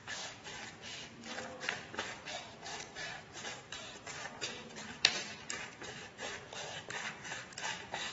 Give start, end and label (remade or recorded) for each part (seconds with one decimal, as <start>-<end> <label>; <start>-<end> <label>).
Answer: 0.0-0.5 remade; 0.5-2.9 recorded; 2.9-8.1 remade